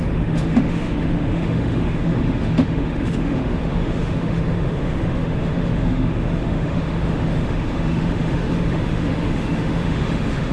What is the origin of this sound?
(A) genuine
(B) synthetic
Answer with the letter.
B